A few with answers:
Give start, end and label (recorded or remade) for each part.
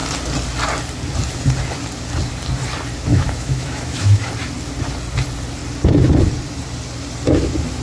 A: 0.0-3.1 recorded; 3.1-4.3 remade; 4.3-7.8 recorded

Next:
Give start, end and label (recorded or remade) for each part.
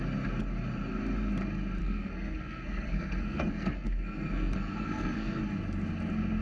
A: 0.0-1.8 recorded; 1.8-5.4 remade; 5.4-6.4 recorded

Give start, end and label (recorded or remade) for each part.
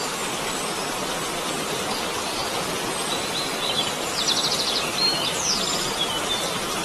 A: 0.0-6.8 recorded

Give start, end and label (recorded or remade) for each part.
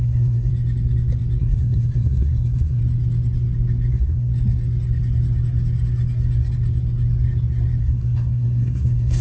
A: 0.0-0.5 remade; 0.5-1.4 recorded; 1.4-2.8 remade; 2.8-3.9 recorded; 3.9-4.3 remade; 4.3-7.8 recorded; 7.8-9.2 remade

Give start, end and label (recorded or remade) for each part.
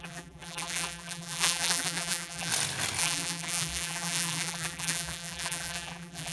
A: 0.0-2.5 remade; 2.5-3.0 recorded; 3.0-6.3 remade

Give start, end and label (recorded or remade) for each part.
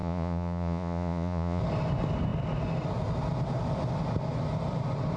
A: 0.0-1.6 remade; 1.6-5.2 recorded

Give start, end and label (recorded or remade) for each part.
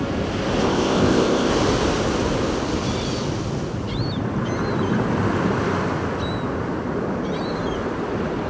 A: 0.0-0.6 recorded; 0.6-1.5 remade; 1.5-8.5 recorded